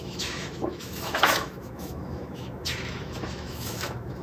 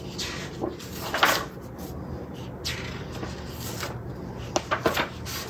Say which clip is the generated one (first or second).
first